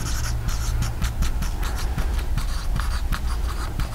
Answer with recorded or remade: recorded